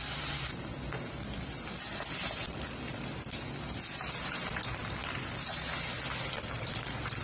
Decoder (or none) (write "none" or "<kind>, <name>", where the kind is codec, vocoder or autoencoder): none